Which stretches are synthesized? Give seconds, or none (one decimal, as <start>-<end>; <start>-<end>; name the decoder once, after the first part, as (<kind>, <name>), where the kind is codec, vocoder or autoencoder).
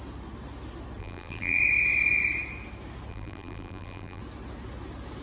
1.0-1.6 (vocoder, BigVGAN v2); 3.1-4.2